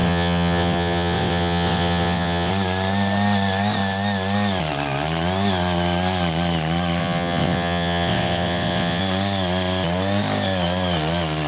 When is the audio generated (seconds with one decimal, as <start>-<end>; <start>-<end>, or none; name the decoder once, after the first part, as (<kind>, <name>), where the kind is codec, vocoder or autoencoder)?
0.0-2.5 (vocoder, WaveNeXt); 7.0-9.0